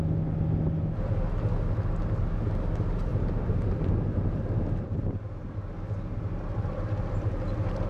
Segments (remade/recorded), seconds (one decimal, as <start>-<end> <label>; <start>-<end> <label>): 0.0-7.9 recorded